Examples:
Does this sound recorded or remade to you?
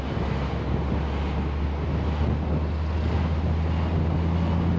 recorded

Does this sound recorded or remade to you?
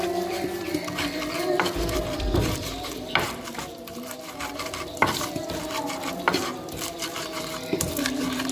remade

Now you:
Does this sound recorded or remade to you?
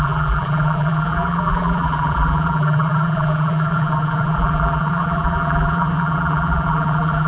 remade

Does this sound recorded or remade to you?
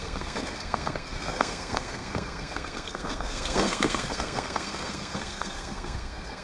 remade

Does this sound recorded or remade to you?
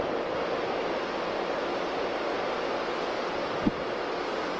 recorded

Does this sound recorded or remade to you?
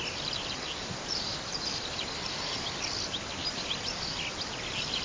recorded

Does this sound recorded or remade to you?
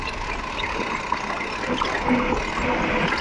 recorded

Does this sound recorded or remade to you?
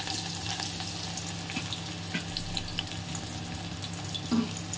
recorded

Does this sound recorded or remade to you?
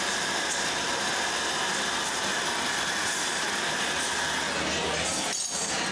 recorded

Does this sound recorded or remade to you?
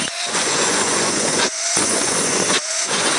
remade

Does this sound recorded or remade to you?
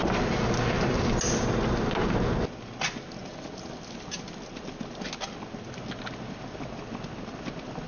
recorded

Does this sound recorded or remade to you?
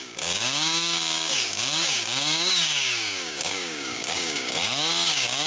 remade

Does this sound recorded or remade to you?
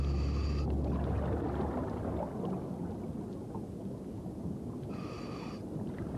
recorded